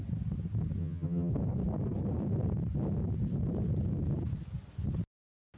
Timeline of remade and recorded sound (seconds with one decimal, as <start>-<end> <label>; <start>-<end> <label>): 0.0-0.8 recorded; 0.8-1.3 remade; 1.3-5.6 recorded